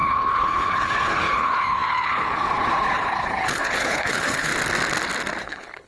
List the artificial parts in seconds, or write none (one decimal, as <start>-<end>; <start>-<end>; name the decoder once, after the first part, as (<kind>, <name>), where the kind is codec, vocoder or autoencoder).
0.0-4.5 (codec, HILCodec); 5.4-5.9